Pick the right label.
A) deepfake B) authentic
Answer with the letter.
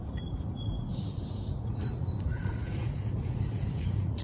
A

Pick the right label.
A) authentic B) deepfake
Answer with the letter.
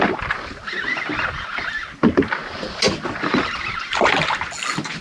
A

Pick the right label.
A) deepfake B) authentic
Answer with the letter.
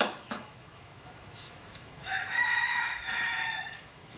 A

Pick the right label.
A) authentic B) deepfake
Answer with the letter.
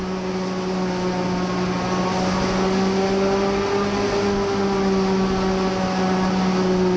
A